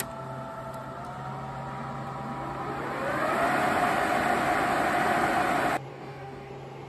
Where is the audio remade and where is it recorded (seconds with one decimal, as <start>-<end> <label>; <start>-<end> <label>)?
0.0-5.9 recorded; 5.9-6.5 remade; 6.5-6.9 recorded